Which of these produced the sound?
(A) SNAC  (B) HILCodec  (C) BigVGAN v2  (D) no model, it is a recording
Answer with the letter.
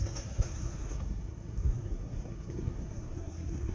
A